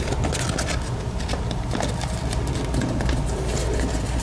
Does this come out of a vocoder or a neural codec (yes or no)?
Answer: no